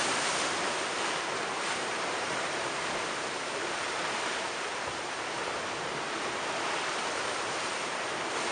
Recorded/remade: remade